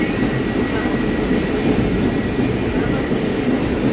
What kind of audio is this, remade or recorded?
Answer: recorded